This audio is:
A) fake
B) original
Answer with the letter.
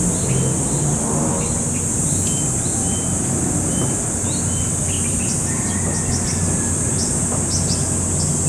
B